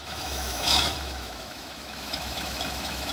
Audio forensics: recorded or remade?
remade